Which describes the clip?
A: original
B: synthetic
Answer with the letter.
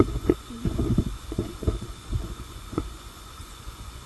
B